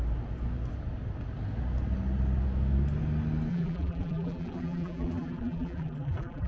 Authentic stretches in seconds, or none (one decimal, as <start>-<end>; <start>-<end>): 0.0-3.5